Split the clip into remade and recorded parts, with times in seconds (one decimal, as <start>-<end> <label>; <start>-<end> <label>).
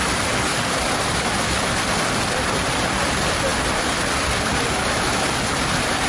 0.0-3.5 remade; 3.5-4.4 recorded; 4.4-6.1 remade